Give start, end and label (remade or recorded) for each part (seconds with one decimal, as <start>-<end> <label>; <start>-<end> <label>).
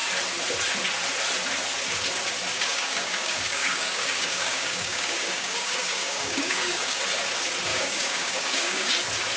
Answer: 0.0-2.5 recorded; 2.5-7.0 remade; 7.0-7.7 recorded; 7.7-8.9 remade; 8.9-9.4 recorded